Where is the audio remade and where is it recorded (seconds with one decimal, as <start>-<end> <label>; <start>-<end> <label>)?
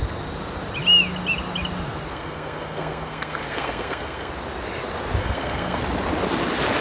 0.0-2.1 recorded; 2.1-4.3 remade; 4.3-5.2 recorded; 5.2-5.8 remade; 5.8-6.8 recorded